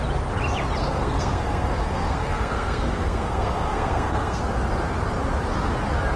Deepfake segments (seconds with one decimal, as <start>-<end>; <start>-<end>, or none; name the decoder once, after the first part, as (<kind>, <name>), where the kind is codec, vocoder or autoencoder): 0.8-4.4 (codec, SNAC)